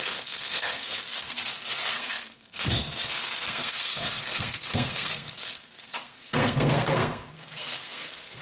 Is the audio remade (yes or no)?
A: yes